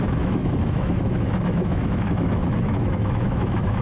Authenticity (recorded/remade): remade